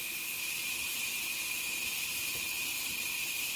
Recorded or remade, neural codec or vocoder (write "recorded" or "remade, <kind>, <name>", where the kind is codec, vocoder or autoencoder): recorded